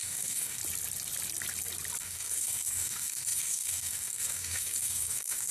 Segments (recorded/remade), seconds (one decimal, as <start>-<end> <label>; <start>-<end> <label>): 0.0-0.6 remade; 0.6-2.0 recorded; 2.0-5.5 remade